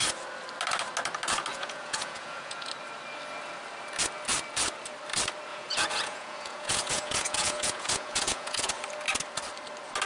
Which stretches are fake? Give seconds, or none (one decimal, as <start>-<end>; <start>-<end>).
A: 1.5-2.7; 5.5-8.7